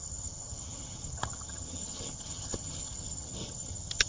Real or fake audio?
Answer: fake